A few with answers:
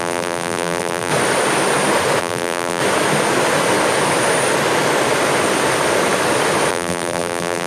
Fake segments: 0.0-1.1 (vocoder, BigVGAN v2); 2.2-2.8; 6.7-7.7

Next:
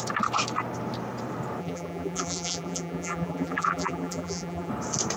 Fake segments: 1.6-4.7 (vocoder, BigVGAN v2)